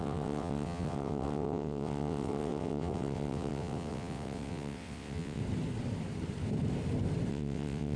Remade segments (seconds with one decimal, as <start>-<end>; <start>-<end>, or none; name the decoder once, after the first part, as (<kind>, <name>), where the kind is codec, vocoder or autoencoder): 0.0-5.4 (vocoder, WaveNeXt); 7.3-8.0